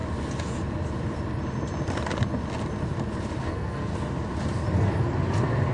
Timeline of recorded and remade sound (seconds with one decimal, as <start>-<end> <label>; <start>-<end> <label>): 0.0-3.4 recorded; 3.4-3.9 remade; 3.9-5.7 recorded